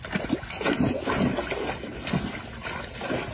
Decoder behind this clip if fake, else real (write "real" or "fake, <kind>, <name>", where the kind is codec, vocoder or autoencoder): real